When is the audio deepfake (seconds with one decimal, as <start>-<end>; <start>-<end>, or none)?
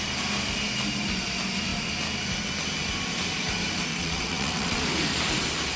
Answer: 3.9-4.8